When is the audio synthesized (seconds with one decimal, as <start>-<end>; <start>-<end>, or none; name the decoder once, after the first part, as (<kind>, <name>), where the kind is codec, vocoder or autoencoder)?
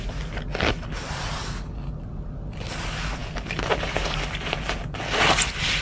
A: none